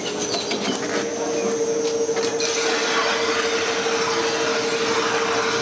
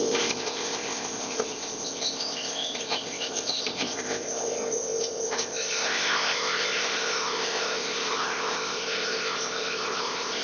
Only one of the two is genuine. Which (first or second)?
first